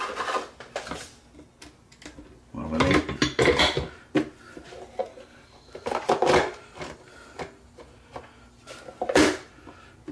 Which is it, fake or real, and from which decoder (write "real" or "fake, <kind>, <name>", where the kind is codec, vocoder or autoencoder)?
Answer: real